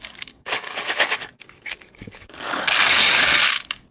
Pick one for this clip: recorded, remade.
remade